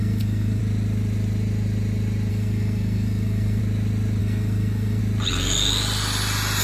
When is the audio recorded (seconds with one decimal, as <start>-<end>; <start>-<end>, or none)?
0.6-2.3; 3.6-4.2; 5.0-6.6